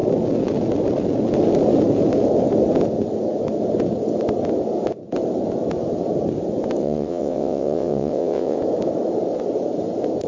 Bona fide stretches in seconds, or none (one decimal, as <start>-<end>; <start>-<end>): 0.0-6.8; 8.6-10.3